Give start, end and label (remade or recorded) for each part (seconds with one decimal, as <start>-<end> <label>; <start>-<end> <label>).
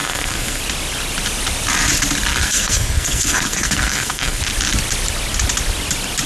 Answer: 0.0-0.6 remade; 0.6-2.3 recorded; 2.3-4.4 remade; 4.4-6.3 recorded